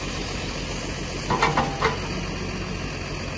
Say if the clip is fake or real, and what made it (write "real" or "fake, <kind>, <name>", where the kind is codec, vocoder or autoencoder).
real